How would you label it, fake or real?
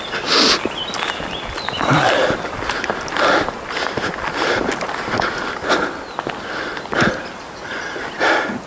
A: real